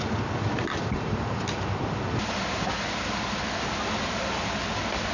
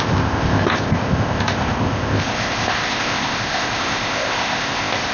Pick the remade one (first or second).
second